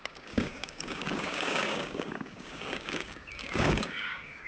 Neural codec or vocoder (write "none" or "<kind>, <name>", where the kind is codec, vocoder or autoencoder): codec, DAC